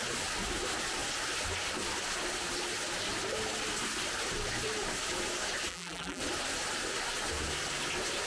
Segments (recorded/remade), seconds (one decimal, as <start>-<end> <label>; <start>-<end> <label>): 0.0-5.7 recorded; 5.7-6.2 remade; 6.2-8.3 recorded